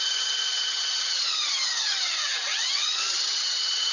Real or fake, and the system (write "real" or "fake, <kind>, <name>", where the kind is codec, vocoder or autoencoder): fake, vocoder, HiFi-GAN